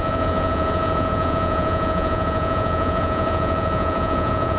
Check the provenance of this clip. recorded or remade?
remade